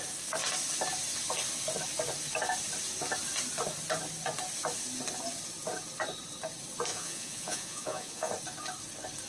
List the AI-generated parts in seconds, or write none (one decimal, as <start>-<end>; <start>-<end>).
6.9-8.3